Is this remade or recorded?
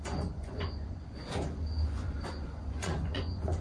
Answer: remade